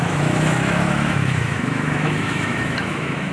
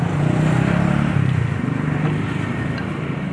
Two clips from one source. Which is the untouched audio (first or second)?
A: second